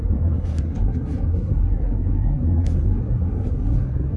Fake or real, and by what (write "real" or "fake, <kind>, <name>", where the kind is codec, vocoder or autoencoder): fake, codec, SNAC